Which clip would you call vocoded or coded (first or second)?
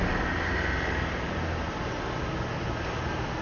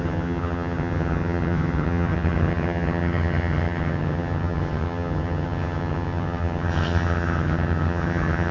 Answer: second